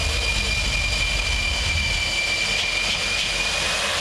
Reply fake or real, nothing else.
real